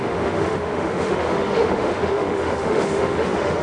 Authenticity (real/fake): fake